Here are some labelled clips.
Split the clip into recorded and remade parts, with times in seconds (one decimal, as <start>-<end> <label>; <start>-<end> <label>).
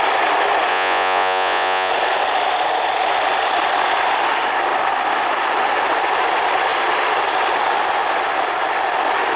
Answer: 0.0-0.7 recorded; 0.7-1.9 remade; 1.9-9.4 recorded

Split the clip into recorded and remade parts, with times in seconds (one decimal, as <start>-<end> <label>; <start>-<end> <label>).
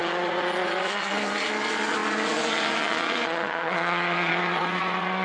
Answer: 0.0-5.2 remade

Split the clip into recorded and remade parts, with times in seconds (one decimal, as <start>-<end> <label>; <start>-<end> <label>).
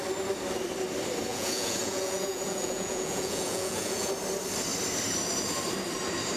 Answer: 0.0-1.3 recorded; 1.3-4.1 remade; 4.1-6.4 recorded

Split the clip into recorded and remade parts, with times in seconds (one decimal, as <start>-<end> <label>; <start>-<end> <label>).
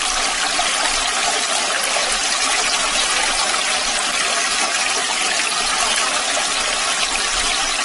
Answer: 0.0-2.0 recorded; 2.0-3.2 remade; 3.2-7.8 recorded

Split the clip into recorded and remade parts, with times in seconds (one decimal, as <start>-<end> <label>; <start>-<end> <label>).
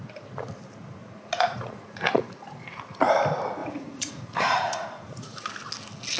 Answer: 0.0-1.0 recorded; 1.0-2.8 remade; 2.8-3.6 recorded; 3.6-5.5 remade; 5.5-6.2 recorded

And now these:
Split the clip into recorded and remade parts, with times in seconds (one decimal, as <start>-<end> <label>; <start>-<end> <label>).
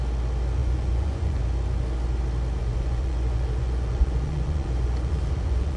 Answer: 0.0-0.6 recorded; 0.6-1.4 remade; 1.4-2.6 recorded; 2.6-5.8 remade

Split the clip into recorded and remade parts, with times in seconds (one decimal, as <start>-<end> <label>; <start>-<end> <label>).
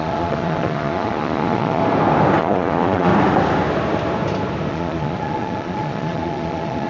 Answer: 0.0-1.8 remade; 1.8-2.4 recorded; 2.4-3.1 remade; 3.1-4.7 recorded; 4.7-6.9 remade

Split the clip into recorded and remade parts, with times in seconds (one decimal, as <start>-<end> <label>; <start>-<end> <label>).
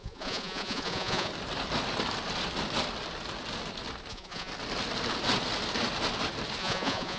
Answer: 0.0-1.3 remade; 1.3-4.1 recorded; 4.1-4.5 remade; 4.5-6.6 recorded; 6.6-7.2 remade